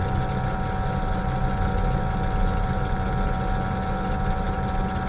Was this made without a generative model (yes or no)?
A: yes